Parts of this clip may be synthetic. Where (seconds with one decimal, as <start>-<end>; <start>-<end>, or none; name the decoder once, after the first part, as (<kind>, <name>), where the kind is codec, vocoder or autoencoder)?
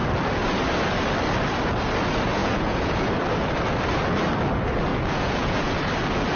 2.4-3.1 (vocoder, Vocos); 4.9-5.7